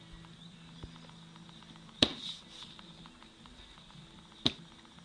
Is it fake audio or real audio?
real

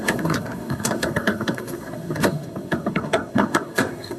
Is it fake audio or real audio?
fake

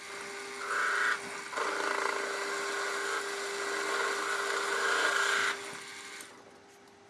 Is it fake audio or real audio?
real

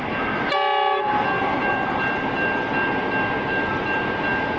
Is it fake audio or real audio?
real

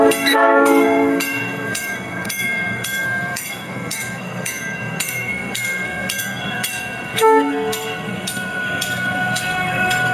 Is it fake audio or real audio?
fake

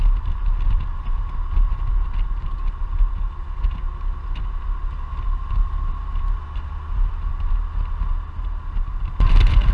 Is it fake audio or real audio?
real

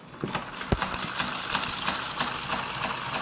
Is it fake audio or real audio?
real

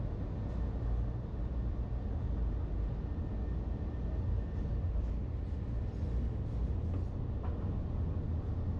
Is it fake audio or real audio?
real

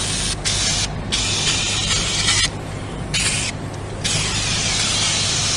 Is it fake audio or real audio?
real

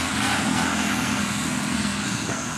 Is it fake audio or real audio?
fake